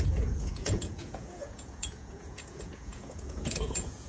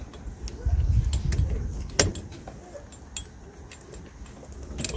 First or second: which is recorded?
second